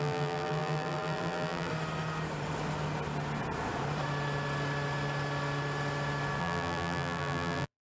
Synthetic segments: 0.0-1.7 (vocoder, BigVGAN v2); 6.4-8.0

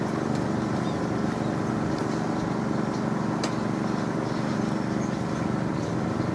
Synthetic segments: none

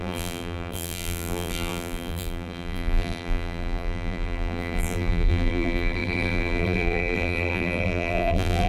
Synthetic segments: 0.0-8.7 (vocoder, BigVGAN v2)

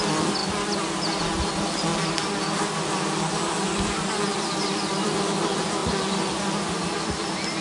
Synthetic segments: none

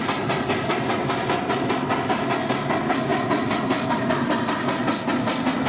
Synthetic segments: none

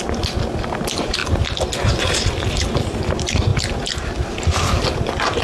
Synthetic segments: 0.0-5.4 (vocoder, BigVGAN v2)

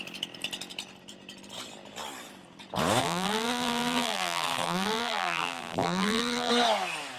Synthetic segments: 3.0-6.5 (vocoder, BigVGAN v2)